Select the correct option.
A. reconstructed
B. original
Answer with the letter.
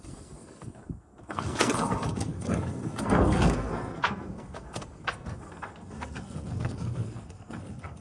A